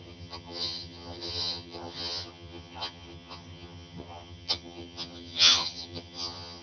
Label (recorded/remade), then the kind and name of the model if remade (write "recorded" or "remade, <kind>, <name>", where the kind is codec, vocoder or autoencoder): remade, vocoder, HiFi-GAN